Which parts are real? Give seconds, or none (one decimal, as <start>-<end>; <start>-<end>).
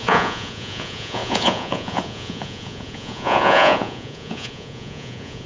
none